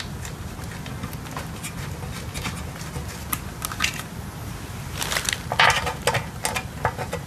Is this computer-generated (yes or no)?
no